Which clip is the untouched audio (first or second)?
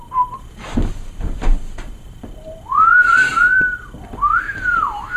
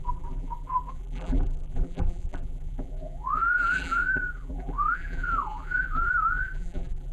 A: first